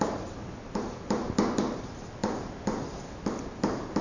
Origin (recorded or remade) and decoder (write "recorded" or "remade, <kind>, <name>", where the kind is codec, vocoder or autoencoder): recorded